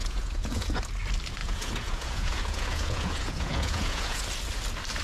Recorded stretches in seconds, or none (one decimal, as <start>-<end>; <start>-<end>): 0.8-1.4; 4.2-5.0